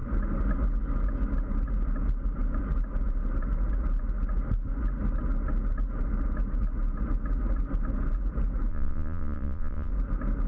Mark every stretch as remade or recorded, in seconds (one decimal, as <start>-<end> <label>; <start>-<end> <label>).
0.0-8.7 recorded; 8.7-9.9 remade; 9.9-10.5 recorded